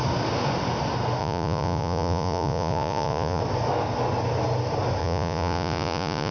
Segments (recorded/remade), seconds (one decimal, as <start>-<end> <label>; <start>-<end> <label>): 0.0-1.2 recorded; 1.2-3.4 remade; 3.4-5.0 recorded; 5.0-6.3 remade